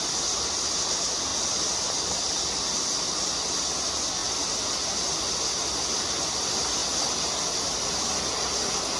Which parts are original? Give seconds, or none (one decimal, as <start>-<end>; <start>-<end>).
0.0-1.3; 3.3-9.0